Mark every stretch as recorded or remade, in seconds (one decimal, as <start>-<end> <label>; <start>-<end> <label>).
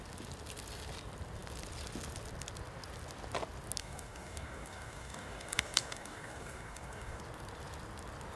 0.0-3.8 recorded; 3.8-7.2 remade; 7.2-8.4 recorded